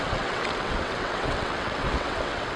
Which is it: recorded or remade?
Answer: remade